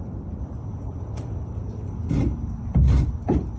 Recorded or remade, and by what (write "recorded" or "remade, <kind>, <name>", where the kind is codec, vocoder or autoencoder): remade, vocoder, BigVGAN v2